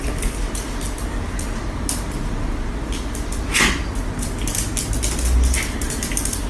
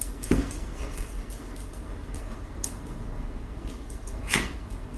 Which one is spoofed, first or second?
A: second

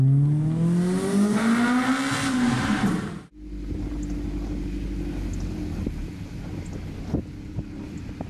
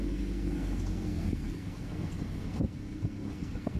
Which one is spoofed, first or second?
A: second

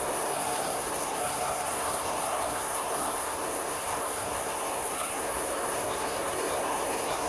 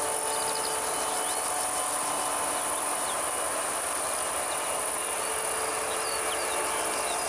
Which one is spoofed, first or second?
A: first